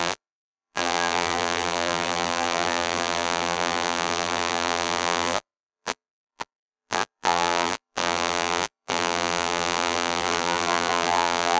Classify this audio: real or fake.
fake